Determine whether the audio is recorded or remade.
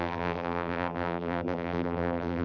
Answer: remade